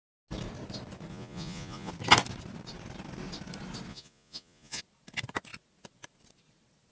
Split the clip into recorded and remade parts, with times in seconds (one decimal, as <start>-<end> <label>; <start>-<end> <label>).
0.0-1.1 recorded; 1.1-1.9 remade; 1.9-3.9 recorded; 3.9-4.8 remade; 4.8-6.9 recorded